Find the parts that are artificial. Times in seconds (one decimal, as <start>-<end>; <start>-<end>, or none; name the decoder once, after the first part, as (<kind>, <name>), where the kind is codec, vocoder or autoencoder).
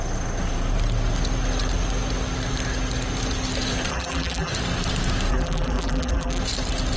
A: 3.9-4.5 (vocoder, BigVGAN v2); 5.3-6.4